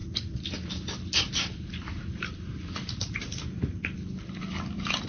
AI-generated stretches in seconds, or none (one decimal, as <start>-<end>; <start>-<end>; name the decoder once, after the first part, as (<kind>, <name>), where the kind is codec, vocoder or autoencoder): 0.5-5.1 (vocoder, BigVGAN v2)